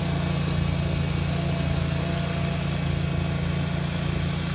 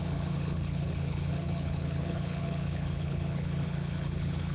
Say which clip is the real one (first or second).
first